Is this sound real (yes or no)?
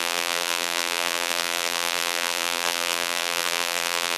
no